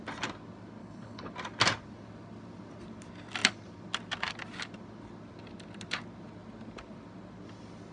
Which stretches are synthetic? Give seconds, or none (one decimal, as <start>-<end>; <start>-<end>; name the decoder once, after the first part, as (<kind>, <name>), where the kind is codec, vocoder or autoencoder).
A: 0.8-1.3 (codec, HILCodec)